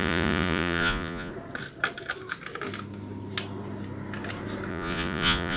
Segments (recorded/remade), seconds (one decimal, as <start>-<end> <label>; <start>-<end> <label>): 0.0-1.3 remade; 1.3-4.7 recorded; 4.7-5.6 remade